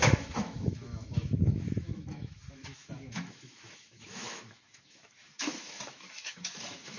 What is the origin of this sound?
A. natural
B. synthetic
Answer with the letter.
B